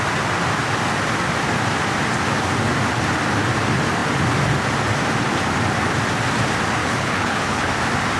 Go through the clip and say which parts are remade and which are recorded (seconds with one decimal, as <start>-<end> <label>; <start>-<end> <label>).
0.0-6.8 recorded; 6.8-7.7 remade; 7.7-8.2 recorded